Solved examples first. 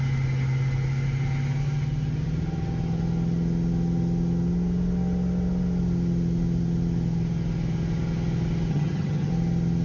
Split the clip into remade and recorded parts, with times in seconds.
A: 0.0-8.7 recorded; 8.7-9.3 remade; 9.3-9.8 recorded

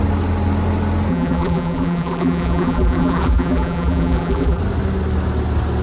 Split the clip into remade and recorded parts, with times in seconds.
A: 0.0-1.1 recorded; 1.1-4.6 remade; 4.6-5.8 recorded

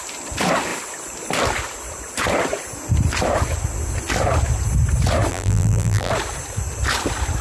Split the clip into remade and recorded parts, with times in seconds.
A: 0.0-5.3 recorded; 5.3-6.1 remade; 6.1-7.4 recorded

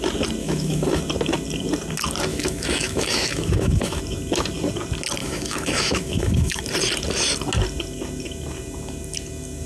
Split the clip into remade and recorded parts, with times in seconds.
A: 0.0-0.4 recorded; 0.4-1.0 remade; 1.0-2.3 recorded; 2.3-4.0 remade; 4.0-5.2 recorded; 5.2-6.6 remade; 6.6-9.7 recorded

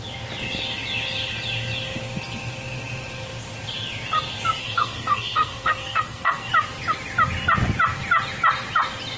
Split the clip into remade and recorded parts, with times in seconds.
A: 0.0-4.6 recorded; 4.6-6.5 remade; 6.5-9.2 recorded